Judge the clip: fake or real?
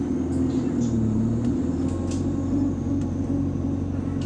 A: real